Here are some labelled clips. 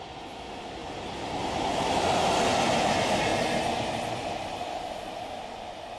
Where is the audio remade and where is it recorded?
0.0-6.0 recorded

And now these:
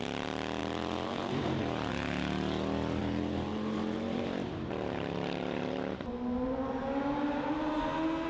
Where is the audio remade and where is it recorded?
0.0-0.6 recorded; 0.6-1.9 remade; 1.9-3.0 recorded; 3.0-7.7 remade; 7.7-8.3 recorded

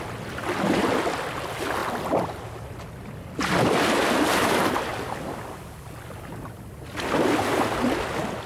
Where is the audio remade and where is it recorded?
0.0-8.5 recorded

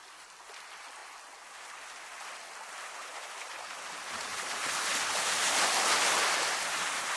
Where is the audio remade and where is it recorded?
0.0-7.2 recorded

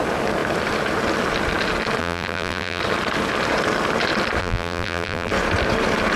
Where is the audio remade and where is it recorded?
0.0-2.0 recorded; 2.0-2.8 remade; 2.8-4.4 recorded; 4.4-5.3 remade; 5.3-6.2 recorded